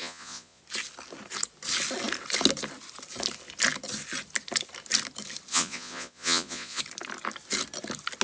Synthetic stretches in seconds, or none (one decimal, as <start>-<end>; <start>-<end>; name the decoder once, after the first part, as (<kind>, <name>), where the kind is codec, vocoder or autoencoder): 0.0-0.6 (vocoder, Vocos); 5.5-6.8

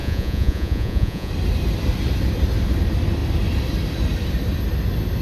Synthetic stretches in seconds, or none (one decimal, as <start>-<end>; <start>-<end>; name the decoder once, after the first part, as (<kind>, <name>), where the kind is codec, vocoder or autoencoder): 0.0-1.3 (vocoder, Vocos)

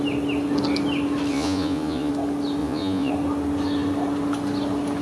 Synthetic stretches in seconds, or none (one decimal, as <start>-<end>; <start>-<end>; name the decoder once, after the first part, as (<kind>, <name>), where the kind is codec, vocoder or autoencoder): 1.3-2.1 (vocoder, Vocos); 2.6-3.1

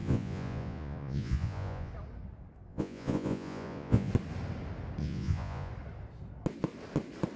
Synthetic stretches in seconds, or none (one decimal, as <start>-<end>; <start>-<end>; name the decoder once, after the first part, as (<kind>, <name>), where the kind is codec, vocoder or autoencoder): 0.0-1.9 (vocoder, Vocos); 2.7-4.1; 5.0-5.7

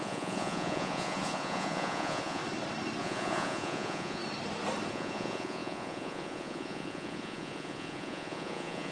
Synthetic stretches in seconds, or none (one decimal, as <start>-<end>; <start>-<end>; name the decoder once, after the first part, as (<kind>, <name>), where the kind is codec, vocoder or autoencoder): 0.0-2.4 (vocoder, Vocos); 3.0-4.2; 4.9-8.9

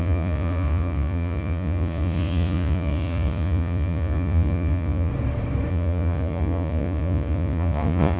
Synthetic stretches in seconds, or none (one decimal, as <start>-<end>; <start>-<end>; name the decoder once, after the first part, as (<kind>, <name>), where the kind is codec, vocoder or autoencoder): 0.0-5.1 (vocoder, Vocos); 5.7-8.2